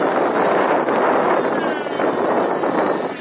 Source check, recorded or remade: recorded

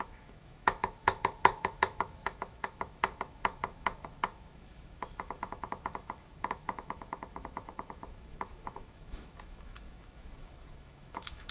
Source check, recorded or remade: remade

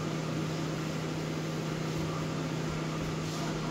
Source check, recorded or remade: recorded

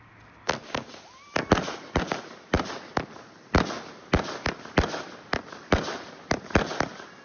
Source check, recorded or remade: recorded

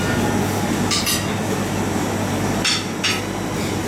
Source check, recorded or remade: recorded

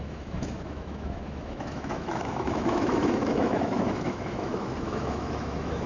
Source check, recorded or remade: remade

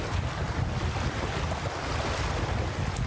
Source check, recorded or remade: recorded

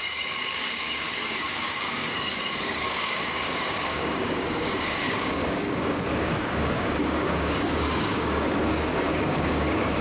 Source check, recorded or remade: remade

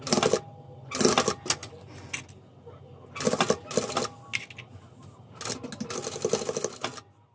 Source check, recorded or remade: recorded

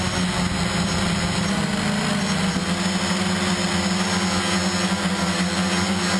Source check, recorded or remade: recorded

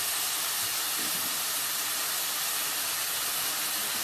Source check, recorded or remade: recorded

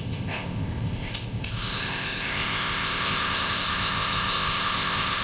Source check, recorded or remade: remade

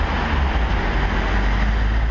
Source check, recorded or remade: recorded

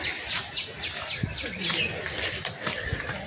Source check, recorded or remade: recorded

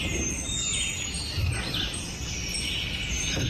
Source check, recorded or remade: recorded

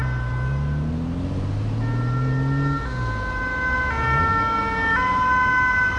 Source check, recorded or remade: recorded